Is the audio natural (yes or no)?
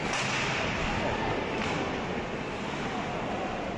yes